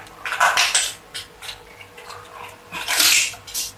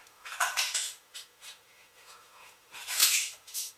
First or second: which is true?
first